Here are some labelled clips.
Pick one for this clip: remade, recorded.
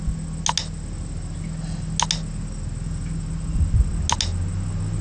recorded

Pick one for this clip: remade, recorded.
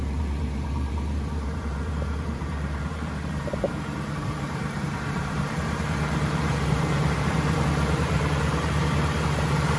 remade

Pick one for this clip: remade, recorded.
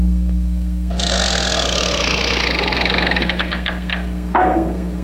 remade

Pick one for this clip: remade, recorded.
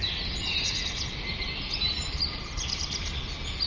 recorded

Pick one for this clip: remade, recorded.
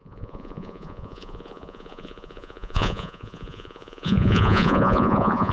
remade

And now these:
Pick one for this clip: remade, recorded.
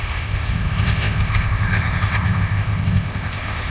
remade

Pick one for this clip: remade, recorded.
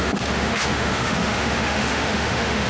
remade